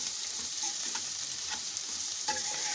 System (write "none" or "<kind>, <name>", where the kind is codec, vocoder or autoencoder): vocoder, BigVGAN v2